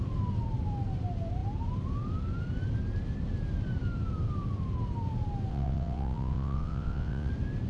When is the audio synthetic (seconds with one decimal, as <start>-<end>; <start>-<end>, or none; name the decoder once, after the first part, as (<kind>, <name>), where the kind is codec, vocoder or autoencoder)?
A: 5.5-7.3 (vocoder, WaveNeXt)

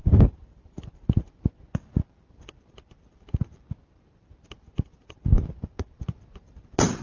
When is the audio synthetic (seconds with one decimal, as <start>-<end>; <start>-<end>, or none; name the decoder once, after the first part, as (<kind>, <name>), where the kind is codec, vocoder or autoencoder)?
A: 0.0-1.2 (vocoder, BigVGAN v2)

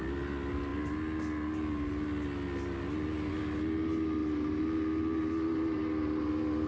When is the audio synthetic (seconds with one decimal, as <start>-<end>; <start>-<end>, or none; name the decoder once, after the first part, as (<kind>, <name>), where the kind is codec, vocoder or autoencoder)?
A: none

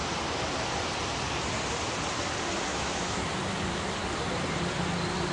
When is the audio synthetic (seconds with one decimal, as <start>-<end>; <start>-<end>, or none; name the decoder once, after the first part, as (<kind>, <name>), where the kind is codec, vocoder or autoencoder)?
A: 2.7-3.3 (autoencoder, DAC-VAE)

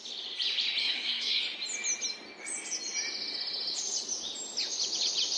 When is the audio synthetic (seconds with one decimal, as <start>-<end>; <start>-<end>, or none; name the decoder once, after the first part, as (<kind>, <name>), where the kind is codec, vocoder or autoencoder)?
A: 0.8-1.4 (codec, SNAC)

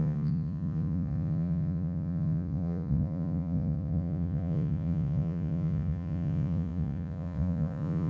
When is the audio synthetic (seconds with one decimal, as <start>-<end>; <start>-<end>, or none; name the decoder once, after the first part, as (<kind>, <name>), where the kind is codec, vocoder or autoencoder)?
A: 0.0-8.1 (vocoder, Vocos)